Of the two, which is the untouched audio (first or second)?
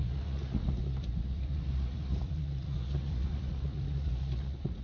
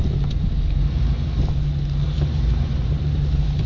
second